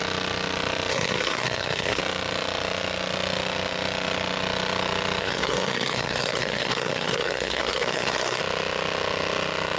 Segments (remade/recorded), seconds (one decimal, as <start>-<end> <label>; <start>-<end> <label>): 0.0-0.9 recorded; 0.9-2.0 remade; 2.0-5.2 recorded; 5.2-8.4 remade; 8.4-9.8 recorded